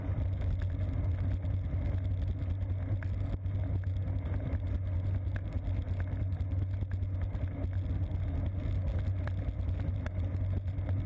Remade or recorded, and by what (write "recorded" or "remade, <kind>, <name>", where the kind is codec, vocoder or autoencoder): recorded